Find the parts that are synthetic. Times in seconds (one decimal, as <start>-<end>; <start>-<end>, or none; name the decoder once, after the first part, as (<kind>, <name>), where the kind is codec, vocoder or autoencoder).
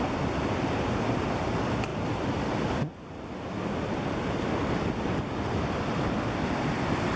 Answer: none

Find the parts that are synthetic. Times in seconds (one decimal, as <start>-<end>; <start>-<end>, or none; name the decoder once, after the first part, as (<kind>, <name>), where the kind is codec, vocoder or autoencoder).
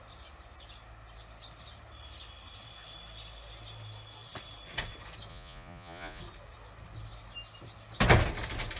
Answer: 5.3-6.2 (vocoder, Vocos)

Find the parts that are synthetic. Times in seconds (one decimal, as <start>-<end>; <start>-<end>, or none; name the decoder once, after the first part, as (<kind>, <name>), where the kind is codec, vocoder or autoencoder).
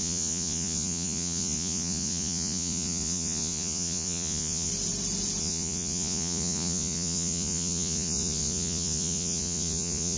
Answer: 0.0-4.7 (vocoder, Vocos); 5.4-10.2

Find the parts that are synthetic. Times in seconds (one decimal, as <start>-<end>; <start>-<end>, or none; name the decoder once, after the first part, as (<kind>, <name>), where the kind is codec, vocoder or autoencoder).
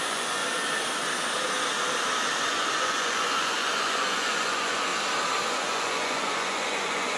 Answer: 0.0-0.4 (vocoder, Vocos); 2.5-4.9; 5.5-7.2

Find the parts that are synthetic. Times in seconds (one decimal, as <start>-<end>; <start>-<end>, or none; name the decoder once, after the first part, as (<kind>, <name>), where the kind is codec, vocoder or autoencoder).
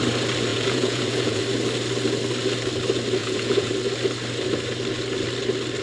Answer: 0.5-1.4 (vocoder, Vocos); 3.2-3.7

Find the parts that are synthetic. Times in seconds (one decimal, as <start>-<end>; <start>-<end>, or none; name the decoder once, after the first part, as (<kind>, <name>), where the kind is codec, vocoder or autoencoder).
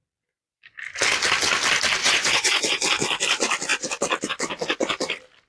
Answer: 2.0-2.6 (vocoder, Vocos)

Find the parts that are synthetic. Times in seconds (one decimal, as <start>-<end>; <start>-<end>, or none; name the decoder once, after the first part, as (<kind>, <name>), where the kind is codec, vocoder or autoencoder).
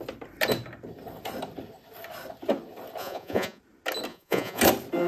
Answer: 3.0-3.6 (vocoder, Vocos); 4.1-4.6